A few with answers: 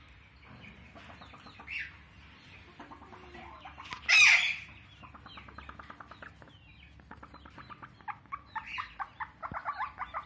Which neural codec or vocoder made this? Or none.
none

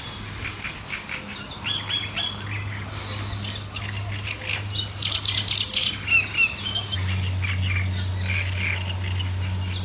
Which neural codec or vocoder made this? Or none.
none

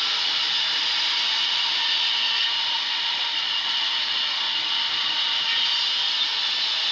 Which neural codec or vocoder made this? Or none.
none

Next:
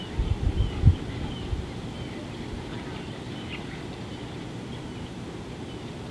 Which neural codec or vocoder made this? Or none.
none